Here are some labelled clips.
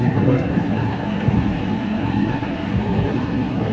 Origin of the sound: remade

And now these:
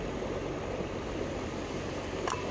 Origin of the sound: recorded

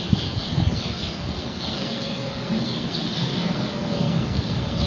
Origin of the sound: remade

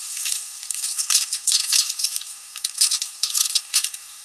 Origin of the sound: remade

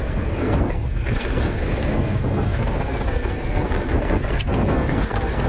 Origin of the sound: remade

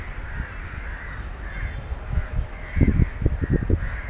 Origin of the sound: recorded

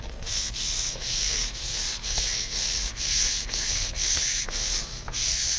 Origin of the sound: remade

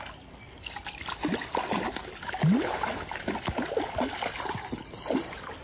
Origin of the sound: recorded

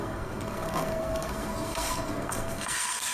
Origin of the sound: remade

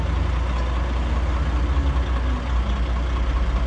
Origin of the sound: recorded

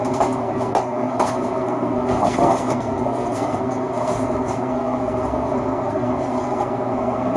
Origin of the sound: remade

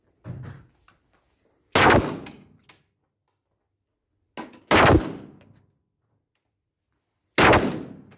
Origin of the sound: recorded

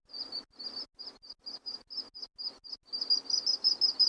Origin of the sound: recorded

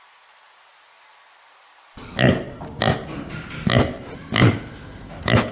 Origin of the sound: recorded